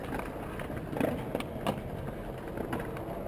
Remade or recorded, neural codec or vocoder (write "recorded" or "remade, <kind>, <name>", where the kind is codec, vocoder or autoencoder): recorded